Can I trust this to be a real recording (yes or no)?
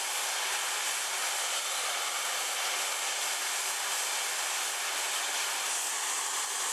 yes